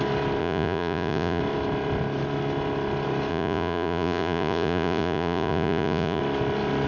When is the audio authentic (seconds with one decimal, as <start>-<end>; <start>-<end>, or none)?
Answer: 0.0-0.4; 1.4-3.3; 6.2-6.9